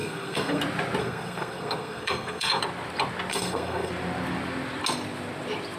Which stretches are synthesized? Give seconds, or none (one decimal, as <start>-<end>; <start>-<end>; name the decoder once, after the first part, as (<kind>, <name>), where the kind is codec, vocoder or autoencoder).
0.0-0.6 (codec, SNAC); 1.0-2.6; 3.3-3.9